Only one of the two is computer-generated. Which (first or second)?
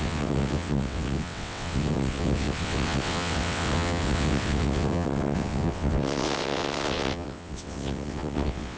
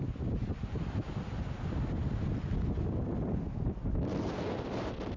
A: first